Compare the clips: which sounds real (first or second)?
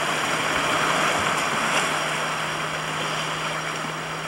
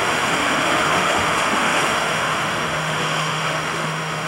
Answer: first